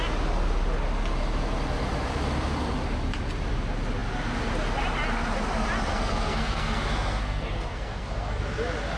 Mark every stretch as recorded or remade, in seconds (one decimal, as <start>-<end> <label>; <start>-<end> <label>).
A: 0.0-5.9 recorded; 5.9-8.4 remade; 8.4-9.0 recorded